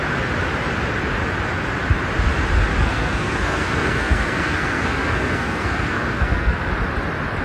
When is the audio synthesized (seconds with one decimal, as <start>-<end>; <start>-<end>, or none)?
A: 2.8-6.7